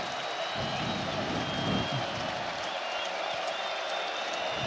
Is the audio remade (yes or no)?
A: no